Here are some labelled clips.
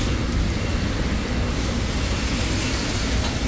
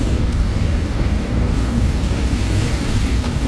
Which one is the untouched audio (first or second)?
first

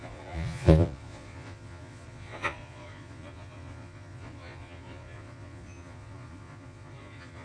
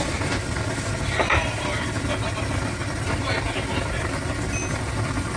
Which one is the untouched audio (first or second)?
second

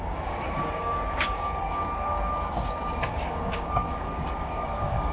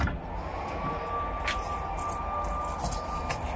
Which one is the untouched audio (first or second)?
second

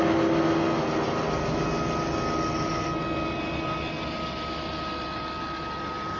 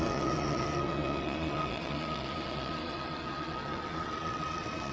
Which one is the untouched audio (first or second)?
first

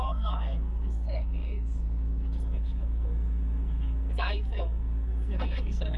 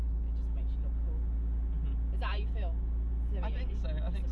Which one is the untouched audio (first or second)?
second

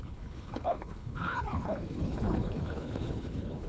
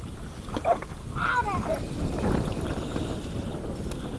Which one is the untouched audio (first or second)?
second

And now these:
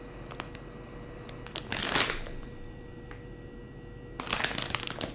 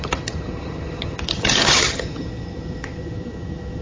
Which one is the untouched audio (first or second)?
first